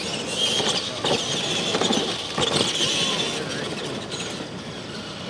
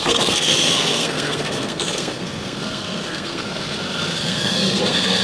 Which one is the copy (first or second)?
second